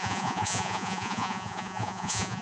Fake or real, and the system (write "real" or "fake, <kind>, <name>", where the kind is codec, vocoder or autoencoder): fake, vocoder, Vocos